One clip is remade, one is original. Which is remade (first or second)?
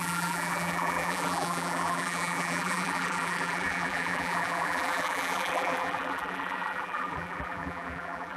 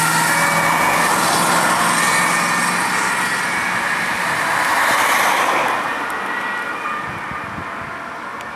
first